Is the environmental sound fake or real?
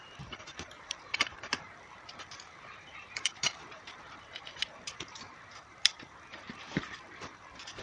fake